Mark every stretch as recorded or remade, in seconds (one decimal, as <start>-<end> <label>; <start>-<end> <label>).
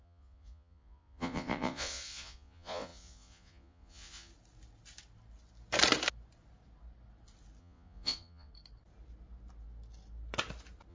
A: 0.0-4.3 remade; 4.3-7.6 recorded; 7.6-8.5 remade; 8.5-10.9 recorded